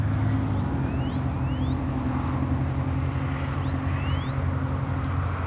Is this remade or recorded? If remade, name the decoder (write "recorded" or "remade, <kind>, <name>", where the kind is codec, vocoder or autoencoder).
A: recorded